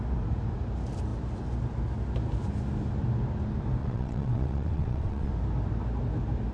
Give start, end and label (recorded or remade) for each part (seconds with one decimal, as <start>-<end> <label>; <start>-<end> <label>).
0.0-3.8 recorded; 3.8-5.3 remade; 5.3-6.5 recorded